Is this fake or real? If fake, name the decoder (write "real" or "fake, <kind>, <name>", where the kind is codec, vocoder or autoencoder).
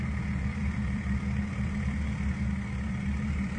fake, vocoder, BigVGAN v2